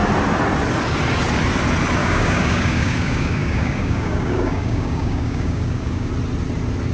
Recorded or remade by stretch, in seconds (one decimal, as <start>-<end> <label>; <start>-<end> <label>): 0.0-2.0 recorded; 2.0-6.1 remade; 6.1-6.9 recorded